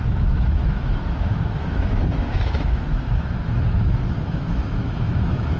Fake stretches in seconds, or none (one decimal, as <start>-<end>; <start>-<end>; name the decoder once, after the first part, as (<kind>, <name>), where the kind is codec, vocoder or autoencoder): 0.0-5.6 (autoencoder, DAC-VAE)